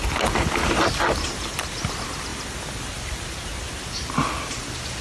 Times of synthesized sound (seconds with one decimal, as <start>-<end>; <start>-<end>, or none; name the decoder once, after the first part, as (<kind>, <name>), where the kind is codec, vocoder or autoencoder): none